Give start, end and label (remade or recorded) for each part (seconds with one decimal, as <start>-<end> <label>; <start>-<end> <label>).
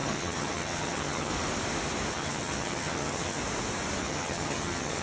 0.0-1.3 remade; 1.3-2.1 recorded; 2.1-3.4 remade; 3.4-4.0 recorded; 4.0-5.0 remade